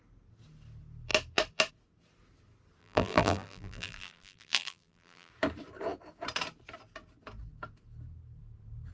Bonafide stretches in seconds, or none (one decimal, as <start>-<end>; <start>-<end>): 0.0-2.8; 5.3-8.9